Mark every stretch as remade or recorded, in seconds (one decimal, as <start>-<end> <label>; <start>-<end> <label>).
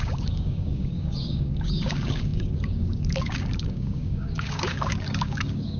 0.0-5.8 remade